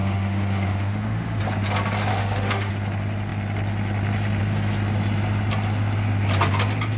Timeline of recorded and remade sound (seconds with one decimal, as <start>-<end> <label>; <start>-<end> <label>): 0.0-1.4 remade; 1.4-2.1 recorded; 2.1-2.7 remade; 2.7-7.0 recorded

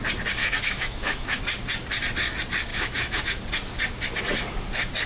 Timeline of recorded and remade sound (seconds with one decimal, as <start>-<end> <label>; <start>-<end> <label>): 0.0-0.4 recorded; 0.4-1.4 remade; 1.4-2.7 recorded; 2.7-3.4 remade; 3.4-5.1 recorded

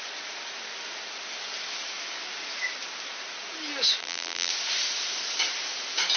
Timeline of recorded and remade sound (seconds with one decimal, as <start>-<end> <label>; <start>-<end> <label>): 0.0-4.0 recorded; 4.0-4.5 remade; 4.5-6.2 recorded

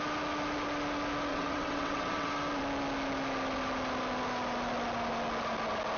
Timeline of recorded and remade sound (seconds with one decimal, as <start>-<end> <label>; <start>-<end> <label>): 0.0-1.3 recorded; 1.3-2.3 remade; 2.3-6.0 recorded

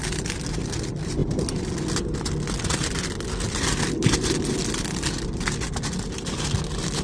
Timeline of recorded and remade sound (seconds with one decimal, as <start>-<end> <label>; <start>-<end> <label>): 0.0-7.0 recorded

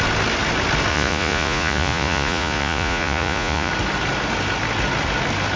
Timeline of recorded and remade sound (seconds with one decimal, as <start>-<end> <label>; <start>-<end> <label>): 0.0-0.9 recorded; 0.9-3.7 remade; 3.7-5.6 recorded

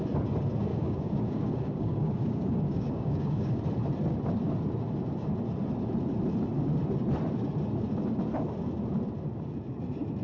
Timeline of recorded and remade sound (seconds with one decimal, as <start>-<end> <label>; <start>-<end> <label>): 0.0-0.7 recorded; 0.7-3.6 remade; 3.6-10.2 recorded

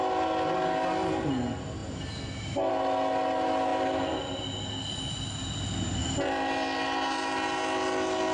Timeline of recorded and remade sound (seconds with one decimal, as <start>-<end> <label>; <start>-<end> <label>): 0.0-8.3 recorded